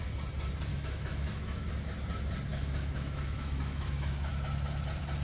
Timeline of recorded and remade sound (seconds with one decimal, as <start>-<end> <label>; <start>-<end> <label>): 0.0-0.7 recorded; 0.7-1.7 remade; 1.7-2.5 recorded; 2.5-4.3 remade; 4.3-5.2 recorded